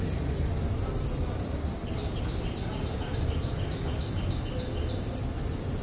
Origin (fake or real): real